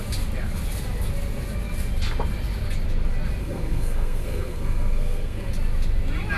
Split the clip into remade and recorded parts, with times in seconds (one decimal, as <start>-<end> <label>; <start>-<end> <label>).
0.0-3.4 recorded; 3.4-5.5 remade; 5.5-6.4 recorded